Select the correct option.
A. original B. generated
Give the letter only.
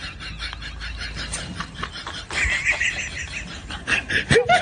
A